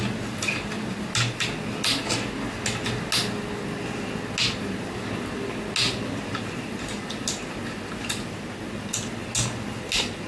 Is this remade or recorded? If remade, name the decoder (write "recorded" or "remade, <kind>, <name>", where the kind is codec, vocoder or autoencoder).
recorded